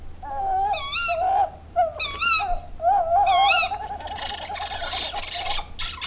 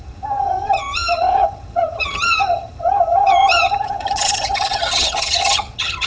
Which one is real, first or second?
first